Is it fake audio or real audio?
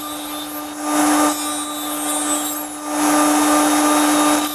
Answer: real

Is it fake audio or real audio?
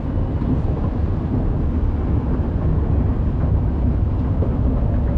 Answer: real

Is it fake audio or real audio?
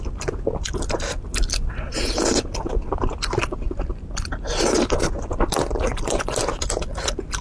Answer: real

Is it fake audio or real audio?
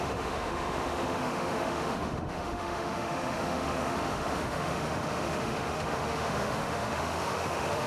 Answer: fake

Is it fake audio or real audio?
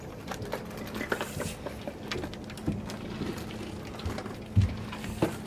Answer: real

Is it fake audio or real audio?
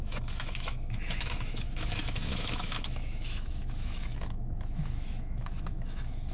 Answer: fake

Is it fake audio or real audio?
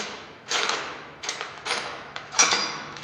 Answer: fake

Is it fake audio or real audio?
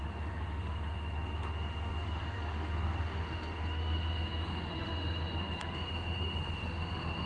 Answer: fake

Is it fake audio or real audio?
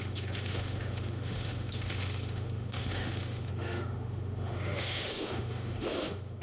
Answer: fake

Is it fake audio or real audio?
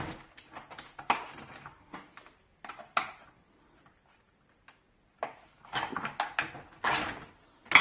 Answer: real